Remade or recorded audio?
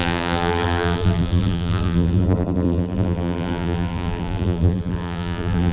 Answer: remade